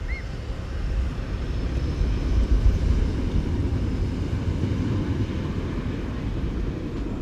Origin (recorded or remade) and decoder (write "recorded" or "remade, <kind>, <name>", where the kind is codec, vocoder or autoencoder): recorded